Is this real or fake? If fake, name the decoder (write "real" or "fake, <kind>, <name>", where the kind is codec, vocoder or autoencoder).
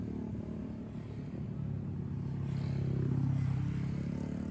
real